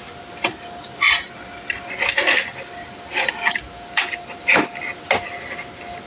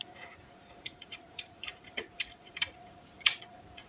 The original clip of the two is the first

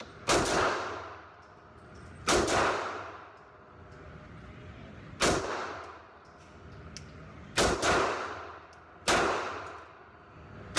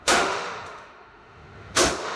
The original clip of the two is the first